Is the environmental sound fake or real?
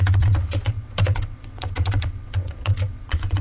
fake